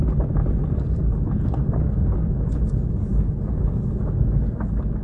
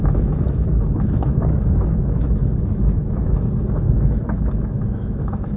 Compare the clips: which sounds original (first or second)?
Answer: first